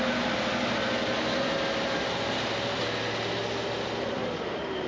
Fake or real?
real